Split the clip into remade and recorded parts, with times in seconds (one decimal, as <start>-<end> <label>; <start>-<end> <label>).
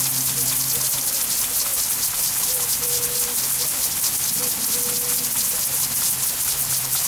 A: 0.0-6.6 recorded; 6.6-7.1 remade